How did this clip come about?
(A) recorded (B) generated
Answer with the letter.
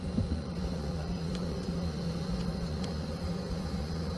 B